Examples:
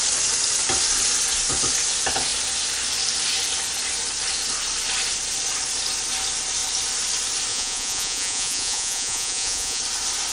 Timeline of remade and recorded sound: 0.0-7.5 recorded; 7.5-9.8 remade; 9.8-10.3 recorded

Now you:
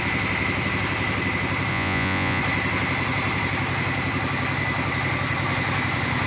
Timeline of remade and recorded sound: 0.0-1.7 recorded; 1.7-2.4 remade; 2.4-6.3 recorded

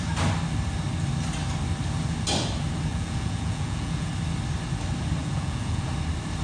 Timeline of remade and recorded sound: 0.0-2.9 recorded; 2.9-4.1 remade; 4.1-5.2 recorded; 5.2-5.9 remade; 5.9-6.4 recorded

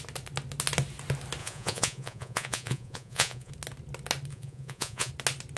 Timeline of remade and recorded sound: 0.0-1.4 recorded; 1.4-3.5 remade; 3.5-4.3 recorded; 4.3-5.1 remade; 5.1-5.6 recorded

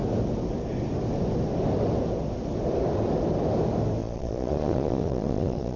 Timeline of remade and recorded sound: 0.0-4.0 recorded; 4.0-5.8 remade

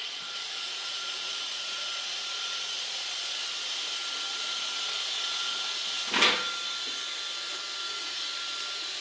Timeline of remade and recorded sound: 0.0-3.4 remade; 3.4-4.3 recorded; 4.3-5.6 remade; 5.6-9.0 recorded

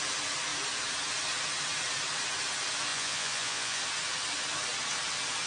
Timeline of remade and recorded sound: 0.0-2.9 recorded; 2.9-3.8 remade; 3.8-5.5 recorded